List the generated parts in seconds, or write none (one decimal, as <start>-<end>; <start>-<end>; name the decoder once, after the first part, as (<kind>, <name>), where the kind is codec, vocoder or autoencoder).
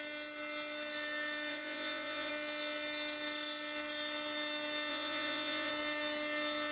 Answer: 1.5-2.3 (vocoder, Vocos); 4.9-5.7